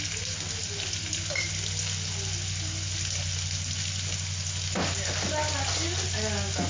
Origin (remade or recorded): recorded